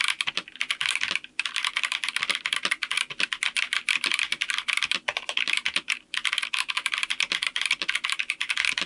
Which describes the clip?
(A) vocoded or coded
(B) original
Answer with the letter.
B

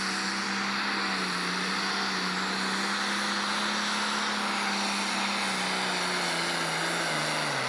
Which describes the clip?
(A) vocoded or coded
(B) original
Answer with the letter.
B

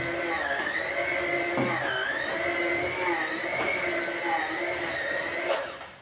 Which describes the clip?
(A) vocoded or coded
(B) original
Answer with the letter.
B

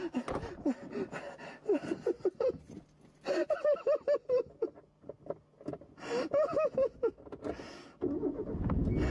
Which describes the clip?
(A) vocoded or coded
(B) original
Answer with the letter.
B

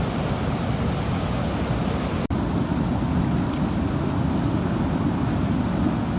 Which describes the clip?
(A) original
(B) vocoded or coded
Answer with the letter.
A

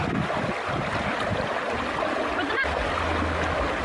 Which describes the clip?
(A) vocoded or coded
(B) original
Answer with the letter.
B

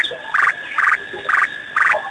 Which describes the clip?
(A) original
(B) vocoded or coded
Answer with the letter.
A